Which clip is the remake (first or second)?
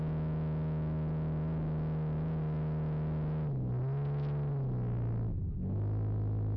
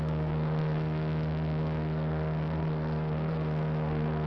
second